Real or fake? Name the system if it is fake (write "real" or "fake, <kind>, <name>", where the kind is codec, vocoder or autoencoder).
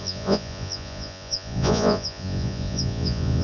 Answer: fake, vocoder, Vocos